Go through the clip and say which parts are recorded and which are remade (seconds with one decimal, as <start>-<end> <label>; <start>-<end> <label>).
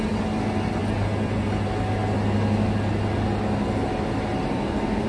0.0-5.1 recorded